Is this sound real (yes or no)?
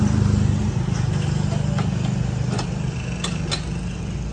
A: yes